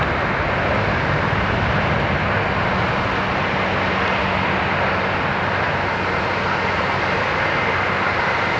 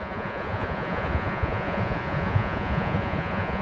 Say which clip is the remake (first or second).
second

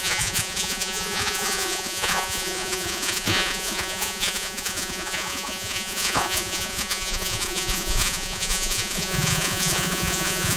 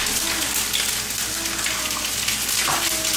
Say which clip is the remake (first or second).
first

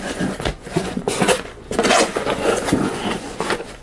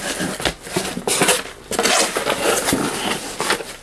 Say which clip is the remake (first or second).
first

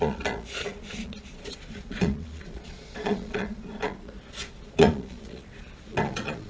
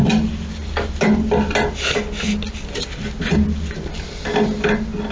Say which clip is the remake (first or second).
first